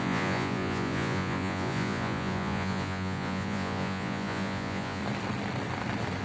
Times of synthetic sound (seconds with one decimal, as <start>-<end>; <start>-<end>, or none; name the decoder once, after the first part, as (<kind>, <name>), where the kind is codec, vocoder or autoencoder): 0.0-5.0 (vocoder, Vocos)